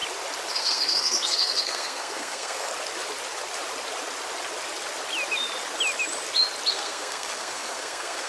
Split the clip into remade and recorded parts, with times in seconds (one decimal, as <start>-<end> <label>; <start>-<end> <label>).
0.0-0.5 recorded; 0.5-2.7 remade; 2.7-6.7 recorded; 6.7-8.3 remade